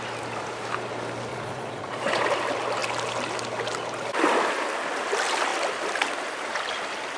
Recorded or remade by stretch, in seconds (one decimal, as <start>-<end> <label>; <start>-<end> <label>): 0.0-1.3 recorded; 1.3-2.2 remade; 2.2-7.2 recorded